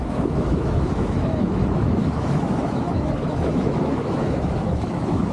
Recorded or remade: remade